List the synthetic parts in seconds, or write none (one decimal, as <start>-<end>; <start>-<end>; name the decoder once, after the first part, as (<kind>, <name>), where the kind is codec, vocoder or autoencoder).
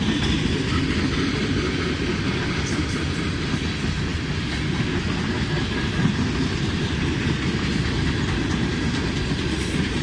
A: none